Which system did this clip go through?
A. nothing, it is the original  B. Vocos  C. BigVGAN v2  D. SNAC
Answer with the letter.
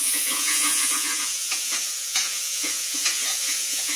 B